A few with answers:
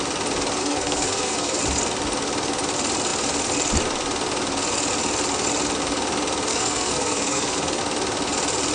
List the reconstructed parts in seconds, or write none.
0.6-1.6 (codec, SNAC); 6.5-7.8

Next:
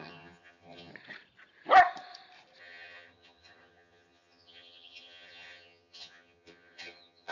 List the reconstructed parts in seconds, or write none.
0.0-0.9 (vocoder, HiFi-GAN); 2.6-7.3

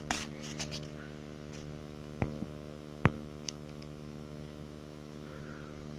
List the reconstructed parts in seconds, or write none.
1.8-5.4 (autoencoder, DAC-VAE)

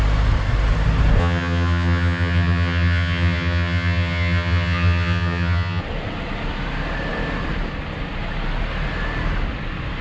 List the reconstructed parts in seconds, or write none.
1.2-5.8 (vocoder, HiFi-GAN)

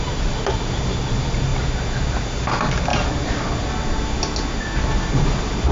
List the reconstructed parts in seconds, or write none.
none

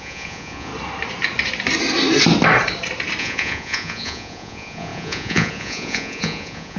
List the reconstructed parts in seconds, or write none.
0.0-0.7 (vocoder, Vocos); 3.2-6.8